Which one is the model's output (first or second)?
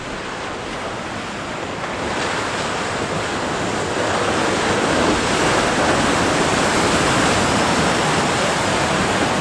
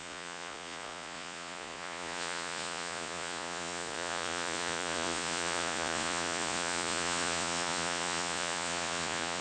second